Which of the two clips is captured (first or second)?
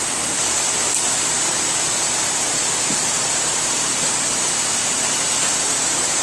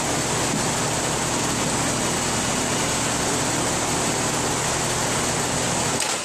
second